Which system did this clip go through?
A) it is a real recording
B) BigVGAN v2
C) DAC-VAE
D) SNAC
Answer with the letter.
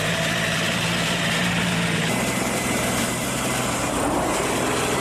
B